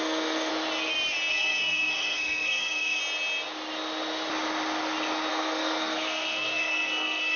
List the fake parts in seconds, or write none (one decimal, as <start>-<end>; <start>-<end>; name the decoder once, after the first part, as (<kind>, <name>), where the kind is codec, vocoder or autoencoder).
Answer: 0.0-0.5 (codec, SNAC); 1.3-3.0; 5.3-7.4